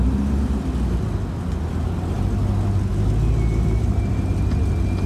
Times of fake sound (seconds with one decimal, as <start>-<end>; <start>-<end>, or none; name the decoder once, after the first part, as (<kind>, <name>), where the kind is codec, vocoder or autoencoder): none

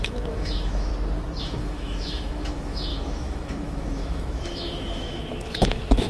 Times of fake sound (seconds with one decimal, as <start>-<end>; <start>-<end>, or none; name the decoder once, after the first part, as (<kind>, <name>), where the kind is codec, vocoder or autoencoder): 0.0-0.9 (autoencoder, DAC-VAE); 1.4-6.1

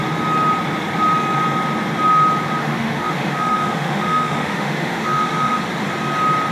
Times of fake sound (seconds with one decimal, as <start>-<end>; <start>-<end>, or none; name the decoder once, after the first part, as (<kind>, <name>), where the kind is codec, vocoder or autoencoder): 2.6-5.6 (autoencoder, DAC-VAE)

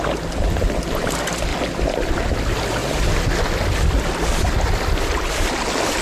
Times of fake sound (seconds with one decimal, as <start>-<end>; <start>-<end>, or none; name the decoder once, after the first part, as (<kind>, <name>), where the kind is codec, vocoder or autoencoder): none

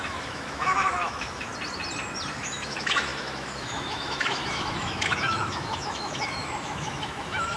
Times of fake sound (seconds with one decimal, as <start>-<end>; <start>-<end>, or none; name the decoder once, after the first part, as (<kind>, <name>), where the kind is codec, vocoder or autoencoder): 0.0-1.5 (autoencoder, DAC-VAE); 2.3-7.6